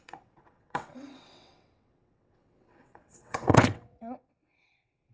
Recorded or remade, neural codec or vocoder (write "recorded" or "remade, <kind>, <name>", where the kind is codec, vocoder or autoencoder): remade, vocoder, WaveNeXt